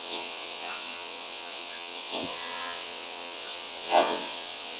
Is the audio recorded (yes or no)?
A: no